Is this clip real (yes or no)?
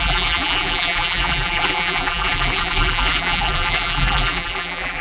no